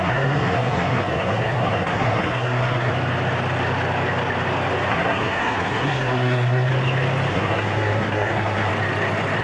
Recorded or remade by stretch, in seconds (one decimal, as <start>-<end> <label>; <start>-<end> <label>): 0.0-2.9 remade; 2.9-4.9 recorded; 4.9-6.7 remade; 6.7-7.3 recorded; 7.3-8.7 remade; 8.7-9.4 recorded